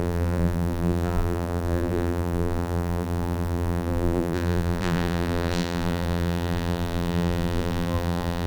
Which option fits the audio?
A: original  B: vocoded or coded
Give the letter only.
B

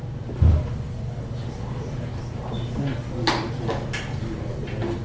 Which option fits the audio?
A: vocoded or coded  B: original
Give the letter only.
B